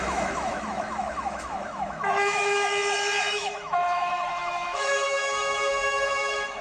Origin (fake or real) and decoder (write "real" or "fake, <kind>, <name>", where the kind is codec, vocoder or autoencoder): fake, autoencoder, DAC-VAE